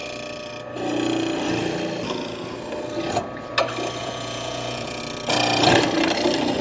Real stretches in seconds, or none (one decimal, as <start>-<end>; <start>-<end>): 0.0-4.0; 5.0-6.6